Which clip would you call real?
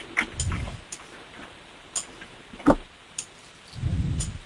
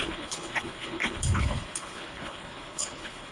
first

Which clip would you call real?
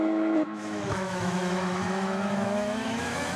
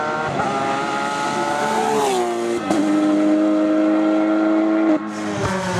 second